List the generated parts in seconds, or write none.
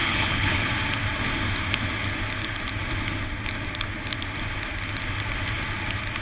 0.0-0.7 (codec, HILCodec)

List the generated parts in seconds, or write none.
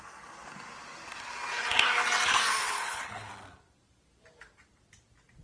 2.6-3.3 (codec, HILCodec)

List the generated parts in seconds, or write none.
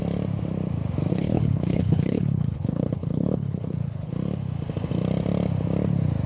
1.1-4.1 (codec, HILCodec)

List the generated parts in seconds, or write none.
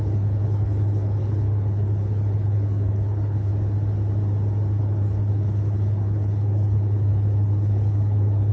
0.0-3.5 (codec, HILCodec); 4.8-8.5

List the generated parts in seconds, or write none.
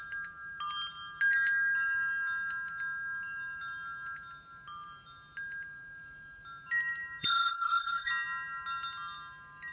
7.2-8.1 (codec, HILCodec)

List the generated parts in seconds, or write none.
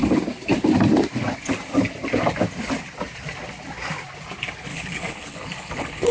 4.7-6.1 (codec, HILCodec)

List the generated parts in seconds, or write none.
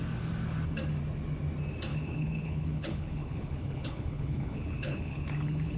1.9-5.8 (codec, HILCodec)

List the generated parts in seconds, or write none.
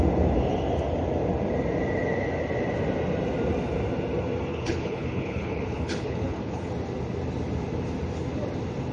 4.5-6.7 (codec, HILCodec)